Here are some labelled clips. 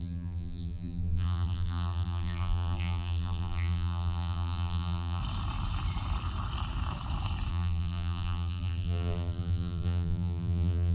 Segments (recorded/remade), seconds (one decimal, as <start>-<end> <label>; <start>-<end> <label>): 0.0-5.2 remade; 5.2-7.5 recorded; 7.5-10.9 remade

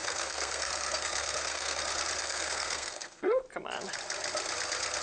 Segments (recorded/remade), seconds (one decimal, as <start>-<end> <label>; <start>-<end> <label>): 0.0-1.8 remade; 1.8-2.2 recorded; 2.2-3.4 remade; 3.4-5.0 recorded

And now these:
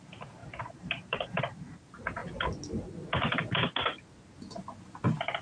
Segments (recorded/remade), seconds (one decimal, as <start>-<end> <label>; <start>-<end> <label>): 0.0-0.4 recorded; 0.4-1.4 remade; 1.4-5.4 recorded